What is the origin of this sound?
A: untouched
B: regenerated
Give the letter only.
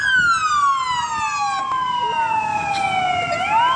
A